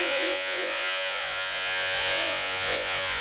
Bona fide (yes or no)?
no